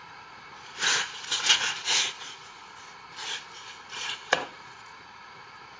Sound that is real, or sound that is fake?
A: fake